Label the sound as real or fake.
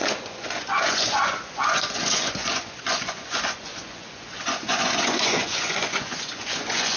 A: fake